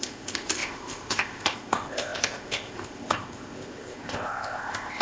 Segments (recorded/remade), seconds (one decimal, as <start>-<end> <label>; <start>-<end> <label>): 0.0-5.0 remade